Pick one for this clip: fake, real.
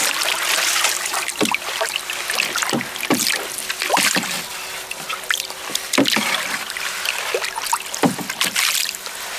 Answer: real